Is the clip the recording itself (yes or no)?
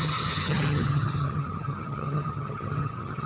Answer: no